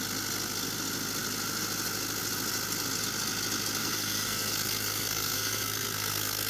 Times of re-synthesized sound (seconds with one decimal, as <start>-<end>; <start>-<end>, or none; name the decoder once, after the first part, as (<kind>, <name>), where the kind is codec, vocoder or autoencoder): 3.8-6.5 (codec, SNAC)